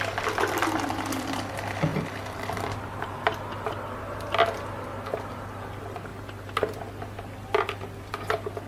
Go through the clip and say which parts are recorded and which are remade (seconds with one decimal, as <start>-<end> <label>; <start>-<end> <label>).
0.0-6.1 remade; 6.1-6.8 recorded; 6.8-8.7 remade